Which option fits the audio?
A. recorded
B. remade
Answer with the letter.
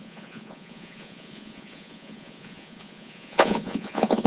B